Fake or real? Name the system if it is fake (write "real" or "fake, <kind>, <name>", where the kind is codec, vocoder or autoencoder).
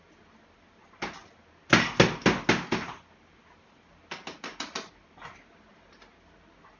real